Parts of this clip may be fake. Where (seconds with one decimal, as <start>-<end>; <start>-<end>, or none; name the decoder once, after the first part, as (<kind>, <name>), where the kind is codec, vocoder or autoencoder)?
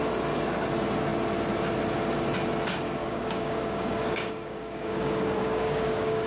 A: 3.0-6.3 (codec, DAC)